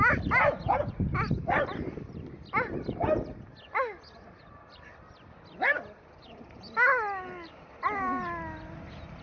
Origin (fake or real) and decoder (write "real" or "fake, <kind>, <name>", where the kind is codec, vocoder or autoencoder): real